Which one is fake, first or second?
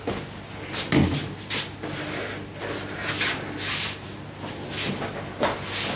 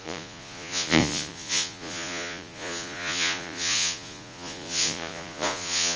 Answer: second